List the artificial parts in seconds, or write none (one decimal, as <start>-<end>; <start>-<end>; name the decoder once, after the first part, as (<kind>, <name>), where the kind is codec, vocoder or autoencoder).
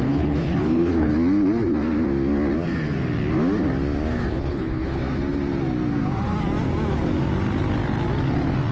0.0-1.1 (codec, HILCodec); 4.3-5.0